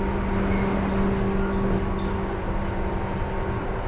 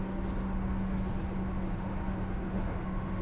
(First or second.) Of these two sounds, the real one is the first